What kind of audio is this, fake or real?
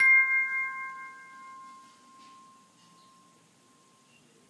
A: real